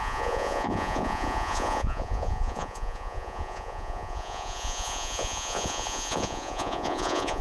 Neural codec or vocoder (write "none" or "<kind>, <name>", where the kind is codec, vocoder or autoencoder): vocoder, Vocos